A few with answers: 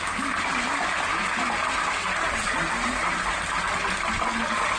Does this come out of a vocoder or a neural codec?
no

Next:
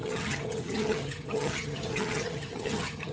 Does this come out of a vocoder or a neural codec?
yes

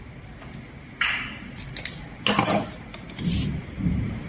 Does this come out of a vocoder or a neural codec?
no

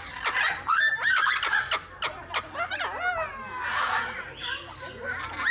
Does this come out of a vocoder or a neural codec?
no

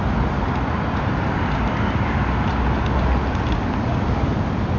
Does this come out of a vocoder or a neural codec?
no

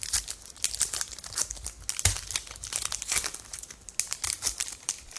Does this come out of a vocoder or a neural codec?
no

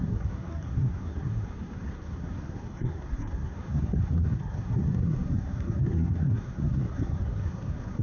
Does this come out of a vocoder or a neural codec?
yes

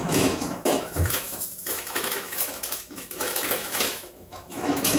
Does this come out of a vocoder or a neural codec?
yes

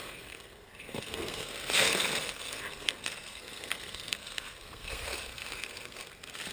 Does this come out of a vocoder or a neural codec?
yes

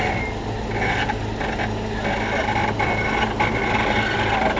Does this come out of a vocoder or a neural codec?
no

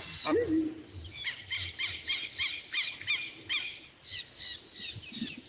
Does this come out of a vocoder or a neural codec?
no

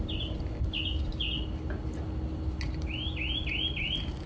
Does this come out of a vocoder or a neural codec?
no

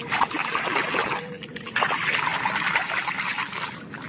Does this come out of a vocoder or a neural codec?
no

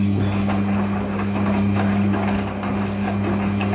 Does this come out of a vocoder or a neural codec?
no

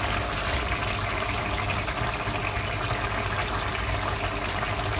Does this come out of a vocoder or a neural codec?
no